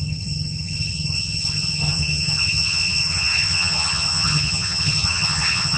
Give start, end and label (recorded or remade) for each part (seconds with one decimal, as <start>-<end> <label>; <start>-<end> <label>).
0.0-5.8 remade